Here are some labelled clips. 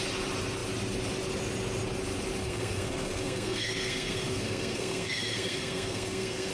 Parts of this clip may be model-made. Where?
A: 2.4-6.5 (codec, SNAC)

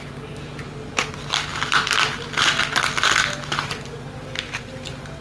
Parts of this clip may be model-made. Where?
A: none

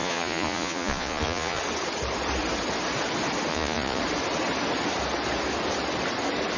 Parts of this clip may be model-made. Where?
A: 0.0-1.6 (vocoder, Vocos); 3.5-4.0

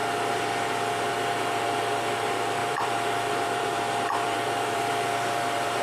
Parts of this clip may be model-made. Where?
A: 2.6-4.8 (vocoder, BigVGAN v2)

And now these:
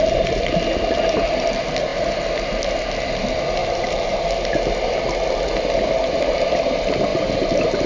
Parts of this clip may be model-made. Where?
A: 3.6-4.2 (vocoder, BigVGAN v2)